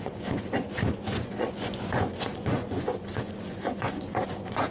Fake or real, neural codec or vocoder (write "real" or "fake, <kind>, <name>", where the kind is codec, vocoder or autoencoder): fake, vocoder, Vocos